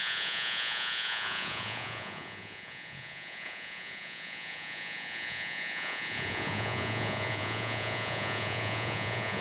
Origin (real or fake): fake